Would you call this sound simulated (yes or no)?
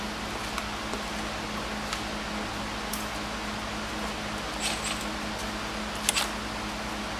no